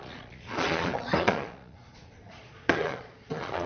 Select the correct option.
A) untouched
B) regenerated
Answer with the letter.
B